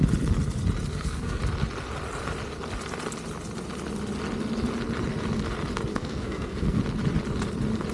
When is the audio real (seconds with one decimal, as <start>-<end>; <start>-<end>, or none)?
0.0-0.9; 1.4-5.9; 6.8-7.9